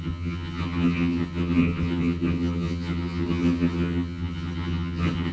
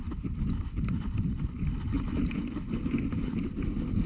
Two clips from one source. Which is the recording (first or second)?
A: second